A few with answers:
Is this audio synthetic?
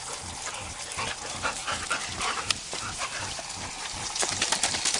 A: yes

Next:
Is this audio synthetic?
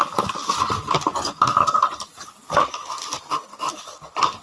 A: no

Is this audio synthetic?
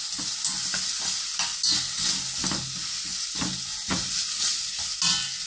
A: no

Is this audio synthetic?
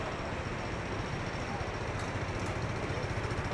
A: no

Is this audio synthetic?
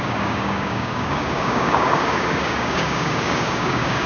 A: yes